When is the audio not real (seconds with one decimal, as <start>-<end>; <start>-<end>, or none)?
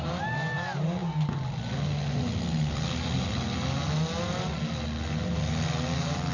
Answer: none